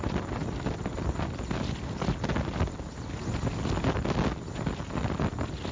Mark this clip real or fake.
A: real